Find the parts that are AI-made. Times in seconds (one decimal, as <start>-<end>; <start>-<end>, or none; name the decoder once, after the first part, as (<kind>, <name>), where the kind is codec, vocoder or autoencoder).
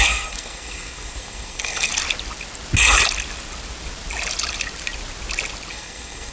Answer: 0.0-1.9 (codec, SNAC); 5.7-6.3